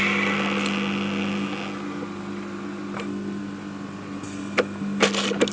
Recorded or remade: recorded